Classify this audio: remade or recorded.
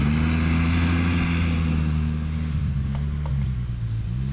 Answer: recorded